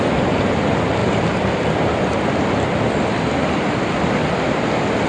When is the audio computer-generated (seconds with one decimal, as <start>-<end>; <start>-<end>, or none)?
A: 1.0-4.1